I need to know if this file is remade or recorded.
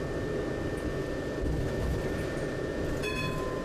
recorded